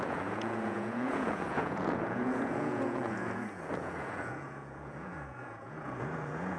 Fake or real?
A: fake